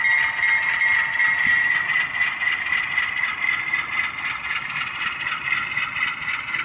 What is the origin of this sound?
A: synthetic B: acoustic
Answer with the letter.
B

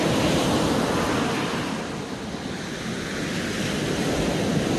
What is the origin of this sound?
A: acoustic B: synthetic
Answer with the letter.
A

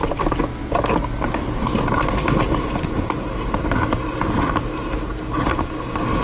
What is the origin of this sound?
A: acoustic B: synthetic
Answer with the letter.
A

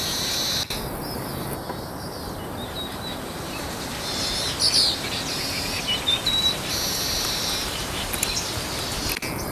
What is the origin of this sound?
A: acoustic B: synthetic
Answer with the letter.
A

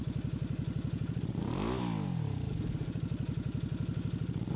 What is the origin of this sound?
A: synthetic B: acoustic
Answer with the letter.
B